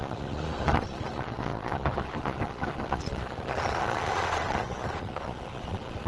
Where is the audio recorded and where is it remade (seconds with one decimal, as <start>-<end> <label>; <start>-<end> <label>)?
0.0-6.1 remade